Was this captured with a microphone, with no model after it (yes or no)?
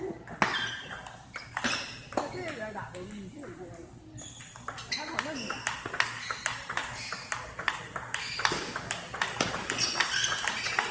yes